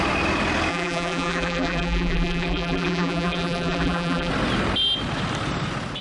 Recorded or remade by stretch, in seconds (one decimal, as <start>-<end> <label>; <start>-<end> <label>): 0.0-0.7 recorded; 0.7-4.3 remade; 4.3-6.0 recorded